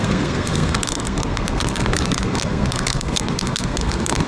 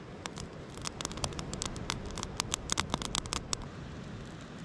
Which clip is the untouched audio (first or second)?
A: second